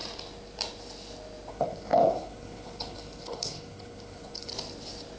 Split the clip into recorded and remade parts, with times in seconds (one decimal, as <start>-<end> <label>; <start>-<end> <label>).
0.0-1.5 recorded; 1.5-4.5 remade; 4.5-5.2 recorded